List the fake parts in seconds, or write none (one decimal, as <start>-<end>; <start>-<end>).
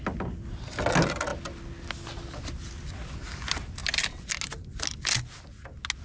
none